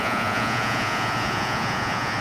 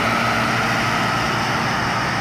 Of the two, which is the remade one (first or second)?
first